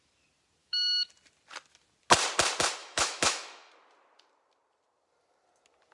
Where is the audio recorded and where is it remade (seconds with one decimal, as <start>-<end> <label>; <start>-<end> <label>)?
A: 0.0-0.6 recorded; 0.6-1.1 remade; 1.1-2.8 recorded; 2.8-3.7 remade; 3.7-5.9 recorded